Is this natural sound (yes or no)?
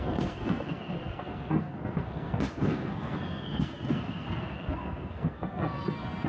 no